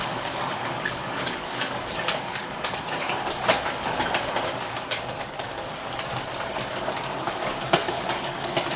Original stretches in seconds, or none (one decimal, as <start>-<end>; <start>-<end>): 5.7-6.7